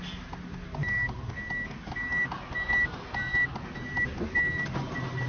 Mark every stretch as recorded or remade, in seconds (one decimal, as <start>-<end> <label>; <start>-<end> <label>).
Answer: 0.0-5.3 recorded